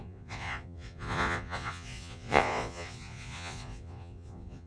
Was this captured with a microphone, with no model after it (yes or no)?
no